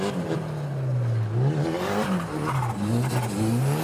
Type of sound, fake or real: real